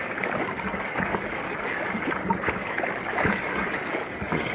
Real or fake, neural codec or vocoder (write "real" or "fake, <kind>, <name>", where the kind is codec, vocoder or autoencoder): fake, codec, DAC